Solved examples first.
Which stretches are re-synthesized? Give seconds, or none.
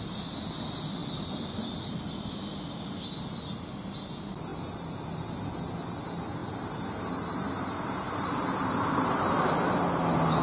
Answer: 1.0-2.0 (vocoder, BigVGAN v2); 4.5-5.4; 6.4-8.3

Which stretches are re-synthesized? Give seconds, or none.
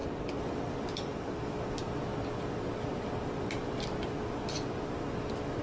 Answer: none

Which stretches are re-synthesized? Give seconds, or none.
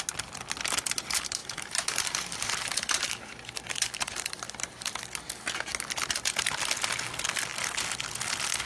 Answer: 1.4-5.0 (vocoder, BigVGAN v2)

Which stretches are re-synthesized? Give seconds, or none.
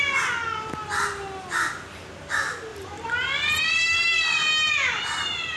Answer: 2.7-5.6 (vocoder, BigVGAN v2)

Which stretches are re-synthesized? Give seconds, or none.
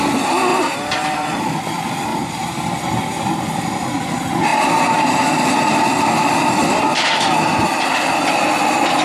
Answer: 0.5-1.6 (vocoder, BigVGAN v2); 2.1-2.9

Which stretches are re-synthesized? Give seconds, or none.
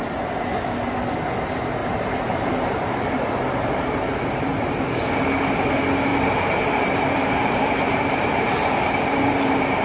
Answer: 1.8-3.0 (vocoder, BigVGAN v2); 6.1-9.8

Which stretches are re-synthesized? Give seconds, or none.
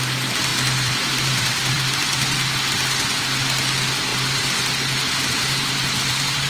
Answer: 0.5-1.8 (vocoder, BigVGAN v2); 4.1-4.6; 5.8-6.5